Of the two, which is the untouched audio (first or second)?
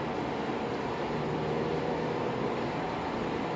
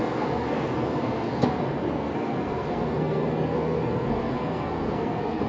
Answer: first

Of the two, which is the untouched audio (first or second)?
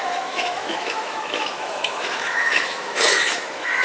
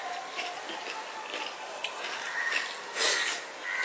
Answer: second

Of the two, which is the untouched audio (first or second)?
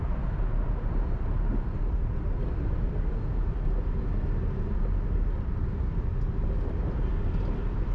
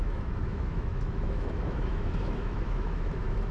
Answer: first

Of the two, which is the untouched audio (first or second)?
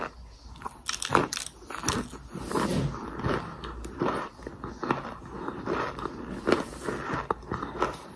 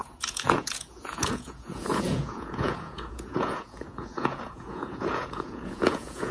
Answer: first